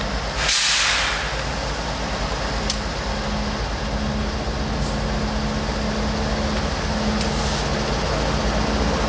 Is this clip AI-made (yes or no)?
no